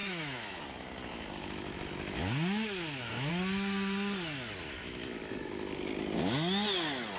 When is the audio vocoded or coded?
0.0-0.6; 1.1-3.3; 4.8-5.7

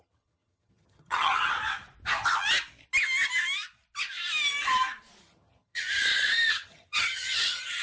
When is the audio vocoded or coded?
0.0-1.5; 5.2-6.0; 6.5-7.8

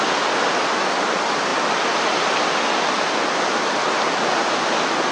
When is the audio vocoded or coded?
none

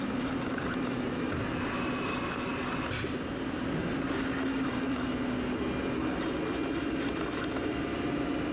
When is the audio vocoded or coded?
none

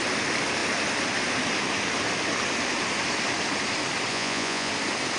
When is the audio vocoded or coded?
4.1-4.7

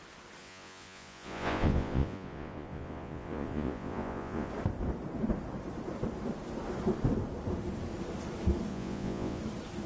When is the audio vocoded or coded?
0.4-4.5; 8.7-9.4

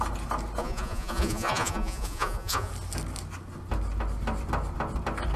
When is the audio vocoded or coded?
0.6-2.7